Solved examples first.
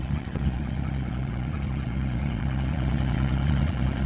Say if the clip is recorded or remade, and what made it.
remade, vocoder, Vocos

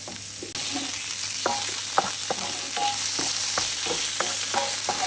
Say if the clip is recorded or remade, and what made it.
recorded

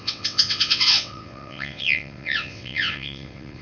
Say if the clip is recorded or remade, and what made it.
remade, vocoder, WaveNeXt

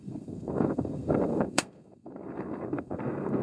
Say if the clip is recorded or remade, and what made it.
remade, codec, SNAC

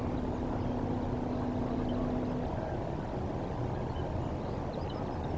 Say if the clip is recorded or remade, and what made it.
recorded